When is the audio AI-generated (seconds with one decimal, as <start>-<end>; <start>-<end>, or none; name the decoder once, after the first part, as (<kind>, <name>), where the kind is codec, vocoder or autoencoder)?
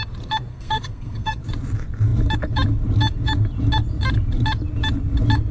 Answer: 0.5-1.4 (codec, SNAC)